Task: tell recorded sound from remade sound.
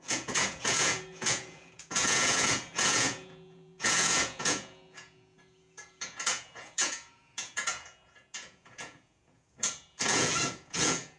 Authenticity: remade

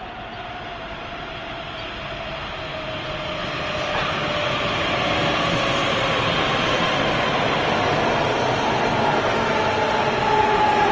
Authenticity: recorded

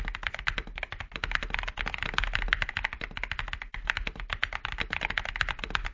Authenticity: recorded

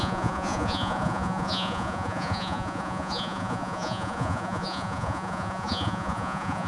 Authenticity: remade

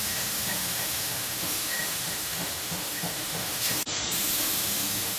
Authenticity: remade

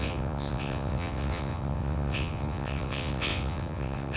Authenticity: remade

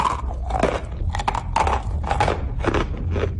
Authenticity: recorded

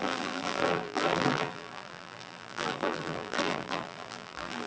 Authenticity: remade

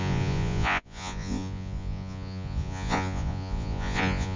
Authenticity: remade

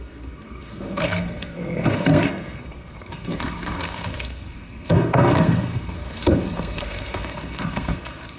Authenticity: remade